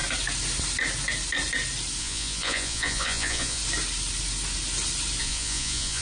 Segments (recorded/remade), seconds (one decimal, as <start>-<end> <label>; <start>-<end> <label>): 0.0-2.0 recorded; 2.0-3.6 remade; 3.6-5.2 recorded; 5.2-6.0 remade